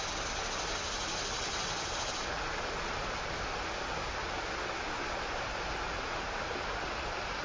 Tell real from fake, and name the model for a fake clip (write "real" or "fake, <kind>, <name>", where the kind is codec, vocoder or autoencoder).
real